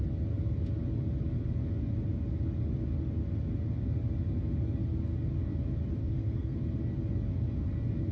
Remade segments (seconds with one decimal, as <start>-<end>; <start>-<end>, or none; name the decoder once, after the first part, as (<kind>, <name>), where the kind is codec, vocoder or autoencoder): 6.0-6.6 (codec, SNAC)